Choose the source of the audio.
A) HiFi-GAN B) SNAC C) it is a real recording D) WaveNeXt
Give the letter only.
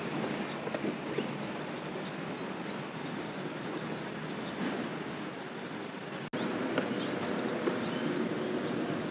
C